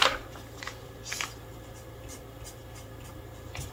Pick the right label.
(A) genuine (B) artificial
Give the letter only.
B